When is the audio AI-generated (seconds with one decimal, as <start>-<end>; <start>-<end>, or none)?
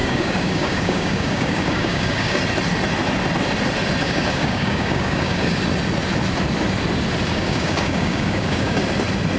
0.0-2.4; 4.0-5.6; 7.3-8.8